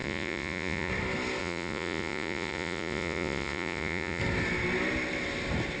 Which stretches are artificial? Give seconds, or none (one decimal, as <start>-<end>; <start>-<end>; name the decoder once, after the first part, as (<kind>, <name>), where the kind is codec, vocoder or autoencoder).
0.0-0.9 (vocoder, Vocos); 1.4-4.2